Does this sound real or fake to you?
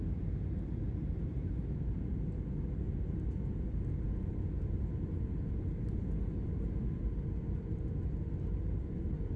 real